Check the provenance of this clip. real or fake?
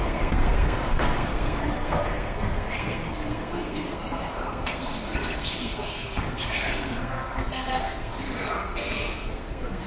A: fake